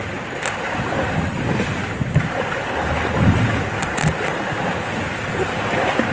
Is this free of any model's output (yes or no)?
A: yes